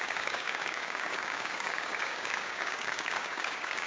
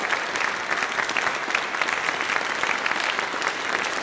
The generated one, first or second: first